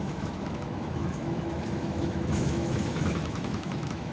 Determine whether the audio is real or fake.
fake